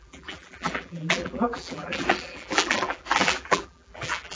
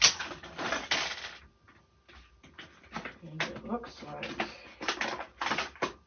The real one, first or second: second